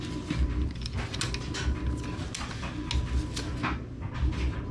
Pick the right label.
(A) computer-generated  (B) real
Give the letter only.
B